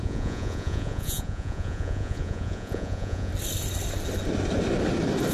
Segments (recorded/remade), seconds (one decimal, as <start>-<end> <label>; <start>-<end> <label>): 0.0-3.3 remade; 3.3-5.3 recorded

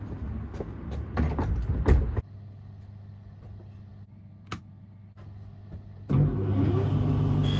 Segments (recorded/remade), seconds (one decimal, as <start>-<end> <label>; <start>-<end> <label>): 0.0-7.6 recorded